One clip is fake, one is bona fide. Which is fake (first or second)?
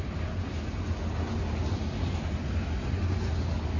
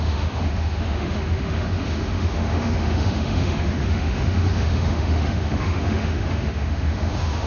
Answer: second